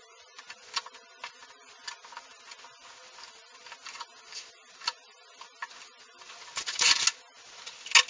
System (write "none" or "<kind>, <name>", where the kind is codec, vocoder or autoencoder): none